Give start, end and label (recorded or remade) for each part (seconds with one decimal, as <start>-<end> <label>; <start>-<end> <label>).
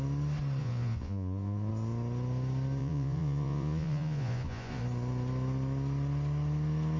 0.0-0.6 recorded; 0.6-1.7 remade; 1.7-2.8 recorded; 2.8-4.8 remade; 4.8-7.0 recorded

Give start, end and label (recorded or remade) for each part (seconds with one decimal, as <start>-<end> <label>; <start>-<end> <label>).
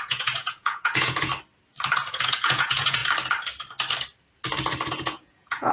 0.0-1.3 remade; 1.3-2.1 recorded; 2.1-3.0 remade; 3.0-4.9 recorded; 4.9-5.7 remade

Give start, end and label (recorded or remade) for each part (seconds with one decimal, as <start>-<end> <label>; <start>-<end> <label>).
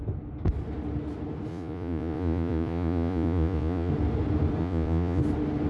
0.0-1.5 recorded; 1.5-3.9 remade; 3.9-4.6 recorded; 4.6-5.2 remade; 5.2-5.7 recorded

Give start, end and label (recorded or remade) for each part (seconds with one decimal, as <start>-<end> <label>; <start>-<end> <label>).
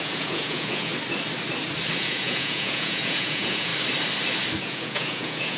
0.0-0.9 remade; 0.9-2.0 recorded; 2.0-3.7 remade; 3.7-4.6 recorded; 4.6-5.6 remade